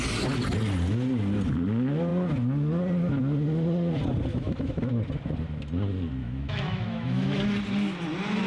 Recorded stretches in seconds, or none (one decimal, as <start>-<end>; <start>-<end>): 0.0-4.3; 4.9-6.2; 7.4-8.5